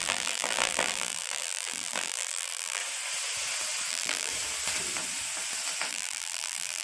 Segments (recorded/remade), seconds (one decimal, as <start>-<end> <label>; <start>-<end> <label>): 0.0-2.8 remade; 2.8-3.9 recorded; 3.9-4.3 remade; 4.3-5.9 recorded; 5.9-6.8 remade